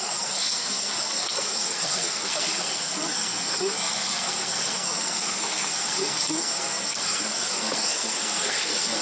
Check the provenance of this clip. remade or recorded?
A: remade